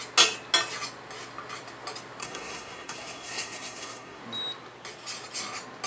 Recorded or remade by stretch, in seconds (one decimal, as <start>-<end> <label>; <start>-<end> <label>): 0.0-2.2 recorded; 2.2-4.2 remade; 4.2-5.9 recorded